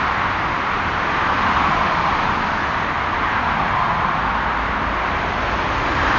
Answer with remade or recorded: recorded